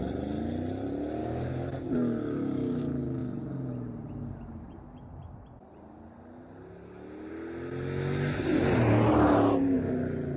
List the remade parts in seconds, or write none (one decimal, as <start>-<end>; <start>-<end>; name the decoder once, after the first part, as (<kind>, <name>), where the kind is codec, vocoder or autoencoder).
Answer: 1.2-2.8 (codec, DAC)